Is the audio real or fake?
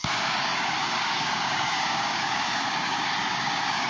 fake